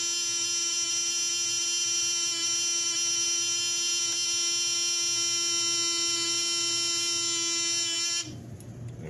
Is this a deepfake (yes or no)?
no